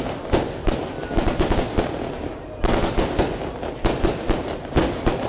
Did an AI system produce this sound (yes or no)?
no